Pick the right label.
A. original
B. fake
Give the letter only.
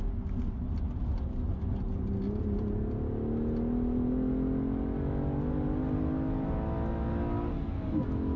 A